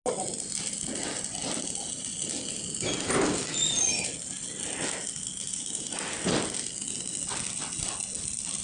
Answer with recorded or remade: recorded